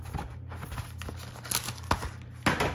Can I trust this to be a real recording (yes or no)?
yes